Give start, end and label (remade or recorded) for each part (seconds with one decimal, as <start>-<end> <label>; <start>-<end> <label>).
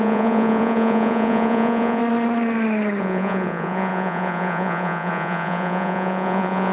0.0-2.0 remade; 2.0-3.0 recorded; 3.0-6.7 remade